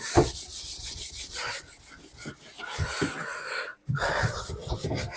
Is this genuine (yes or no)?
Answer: yes